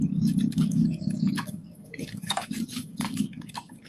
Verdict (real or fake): fake